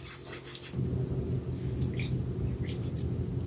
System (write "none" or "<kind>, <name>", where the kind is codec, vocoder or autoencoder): none